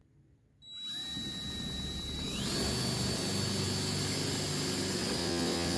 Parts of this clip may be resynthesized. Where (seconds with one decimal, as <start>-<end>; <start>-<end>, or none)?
5.2-5.8